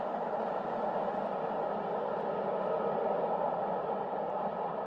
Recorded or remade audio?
recorded